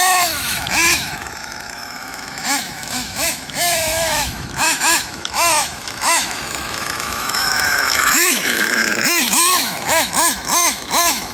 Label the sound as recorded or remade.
remade